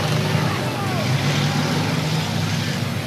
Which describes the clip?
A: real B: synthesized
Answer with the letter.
A